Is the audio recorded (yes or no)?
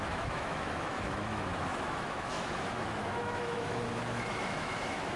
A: no